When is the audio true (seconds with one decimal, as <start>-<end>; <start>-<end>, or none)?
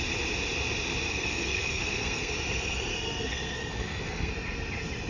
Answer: 0.0-1.1; 2.3-2.9; 4.3-5.1